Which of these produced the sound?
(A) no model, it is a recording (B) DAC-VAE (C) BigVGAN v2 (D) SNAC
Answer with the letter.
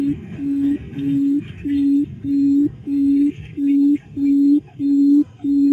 D